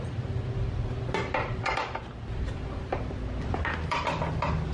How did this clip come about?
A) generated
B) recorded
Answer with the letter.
B